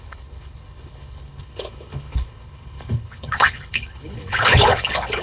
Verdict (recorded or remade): remade